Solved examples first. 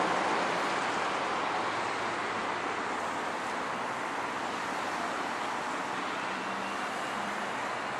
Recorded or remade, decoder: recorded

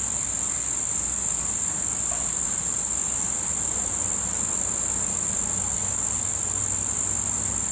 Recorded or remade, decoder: recorded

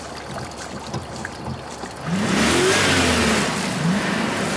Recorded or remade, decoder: recorded